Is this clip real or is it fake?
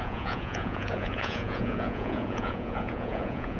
fake